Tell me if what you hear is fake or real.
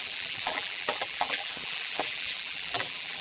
fake